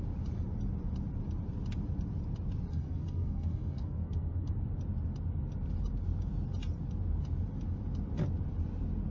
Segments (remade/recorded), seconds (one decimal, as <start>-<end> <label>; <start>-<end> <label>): 0.0-2.7 recorded; 2.7-4.5 remade; 4.5-9.1 recorded